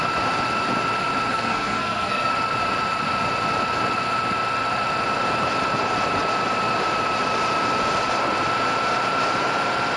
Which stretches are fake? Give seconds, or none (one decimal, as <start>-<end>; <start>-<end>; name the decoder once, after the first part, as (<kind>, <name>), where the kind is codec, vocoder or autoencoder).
1.3-2.3 (codec, SNAC)